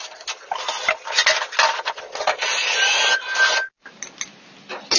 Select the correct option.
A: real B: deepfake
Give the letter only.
A